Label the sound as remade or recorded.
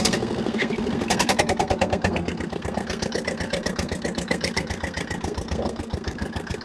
remade